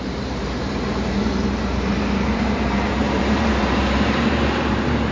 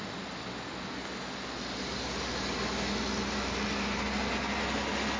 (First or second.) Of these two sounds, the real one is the second